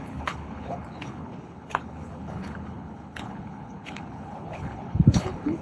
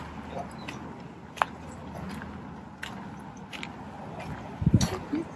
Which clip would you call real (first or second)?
second